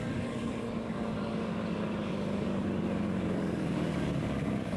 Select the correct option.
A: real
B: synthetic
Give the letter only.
B